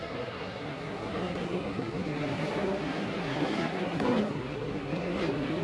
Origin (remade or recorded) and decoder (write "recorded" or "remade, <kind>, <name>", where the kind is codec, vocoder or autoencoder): remade, codec, SNAC